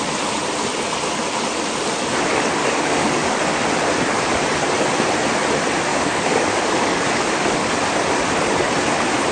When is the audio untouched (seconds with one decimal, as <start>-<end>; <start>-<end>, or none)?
0.0-2.6; 3.4-5.9; 7.7-9.3